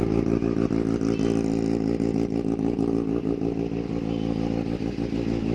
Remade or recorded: recorded